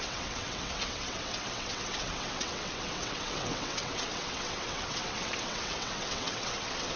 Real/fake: fake